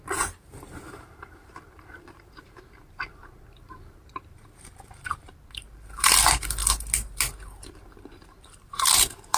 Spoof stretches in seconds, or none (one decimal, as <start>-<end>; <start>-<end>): 0.0-9.4